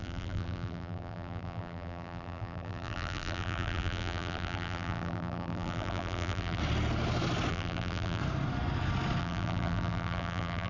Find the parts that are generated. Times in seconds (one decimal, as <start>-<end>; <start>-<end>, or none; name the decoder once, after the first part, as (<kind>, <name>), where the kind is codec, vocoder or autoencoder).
0.0-6.6 (vocoder, BigVGAN v2); 7.5-8.2; 9.2-10.7

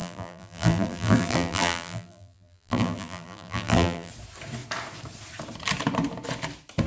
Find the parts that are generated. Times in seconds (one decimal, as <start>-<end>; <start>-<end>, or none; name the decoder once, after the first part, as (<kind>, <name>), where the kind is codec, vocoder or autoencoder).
0.0-4.1 (vocoder, BigVGAN v2)

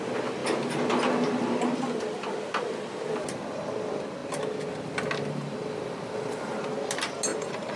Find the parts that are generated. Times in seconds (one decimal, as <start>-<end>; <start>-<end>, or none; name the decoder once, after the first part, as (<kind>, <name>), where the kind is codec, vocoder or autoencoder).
7.3-7.8 (vocoder, BigVGAN v2)

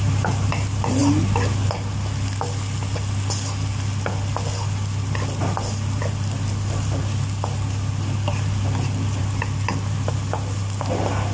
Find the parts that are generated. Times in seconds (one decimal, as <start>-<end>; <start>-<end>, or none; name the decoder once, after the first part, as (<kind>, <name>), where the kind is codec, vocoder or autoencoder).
none

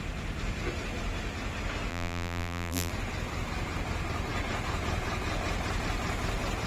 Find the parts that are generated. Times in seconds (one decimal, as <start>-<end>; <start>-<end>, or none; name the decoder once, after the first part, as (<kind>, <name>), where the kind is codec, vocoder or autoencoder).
1.9-2.9 (vocoder, BigVGAN v2)

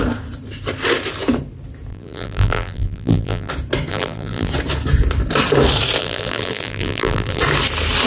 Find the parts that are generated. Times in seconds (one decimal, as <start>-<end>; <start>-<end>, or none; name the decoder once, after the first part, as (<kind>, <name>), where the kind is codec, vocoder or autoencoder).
1.9-3.5 (vocoder, BigVGAN v2); 3.9-4.5; 6.0-7.4

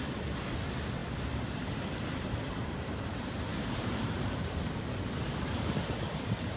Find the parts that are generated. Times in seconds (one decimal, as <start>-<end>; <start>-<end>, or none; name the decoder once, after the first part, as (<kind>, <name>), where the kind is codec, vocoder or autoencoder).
3.5-5.3 (vocoder, BigVGAN v2)

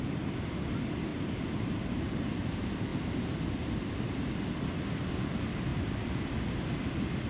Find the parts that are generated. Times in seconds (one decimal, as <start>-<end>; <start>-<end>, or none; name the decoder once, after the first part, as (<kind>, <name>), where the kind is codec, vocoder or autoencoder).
1.1-1.8 (vocoder, BigVGAN v2)